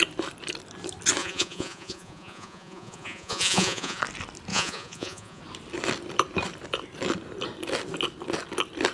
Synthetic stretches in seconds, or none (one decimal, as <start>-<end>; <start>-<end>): 1.2-4.0; 4.5-5.4